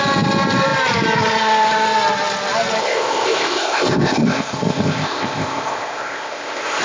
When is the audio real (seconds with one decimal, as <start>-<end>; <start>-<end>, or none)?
0.0-2.8